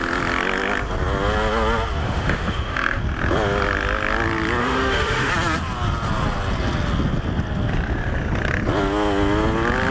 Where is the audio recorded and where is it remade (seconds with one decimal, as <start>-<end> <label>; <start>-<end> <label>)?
0.0-2.0 recorded; 2.0-3.0 remade; 3.0-4.6 recorded; 4.6-5.3 remade; 5.3-9.9 recorded